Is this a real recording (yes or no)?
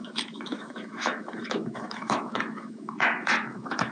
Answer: no